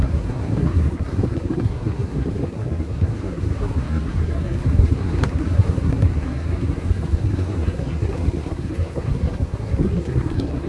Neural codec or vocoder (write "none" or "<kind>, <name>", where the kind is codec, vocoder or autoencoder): codec, SNAC